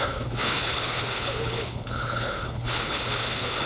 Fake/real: fake